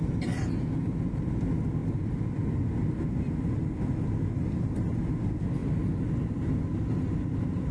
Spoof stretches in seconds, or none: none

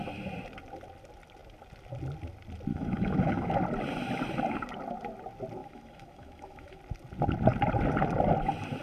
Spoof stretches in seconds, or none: 2.7-3.6 (autoencoder, DAC-VAE); 5.6-6.8

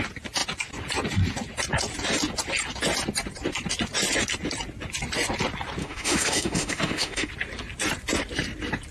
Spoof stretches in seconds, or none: 5.8-7.3 (autoencoder, DAC-VAE)

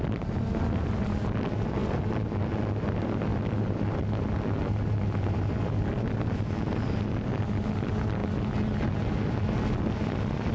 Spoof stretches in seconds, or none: none

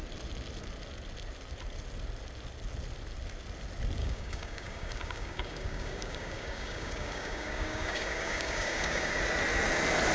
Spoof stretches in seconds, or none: 4.0-9.2 (codec, DAC)

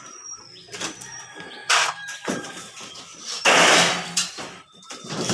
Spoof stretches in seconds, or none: 0.0-5.3 (vocoder, BigVGAN v2)

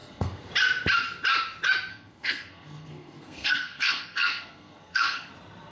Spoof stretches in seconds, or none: 0.0-0.5 (codec, SNAC); 1.9-5.3